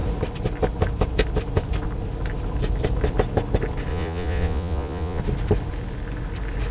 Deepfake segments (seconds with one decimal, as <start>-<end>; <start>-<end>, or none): 3.9-5.2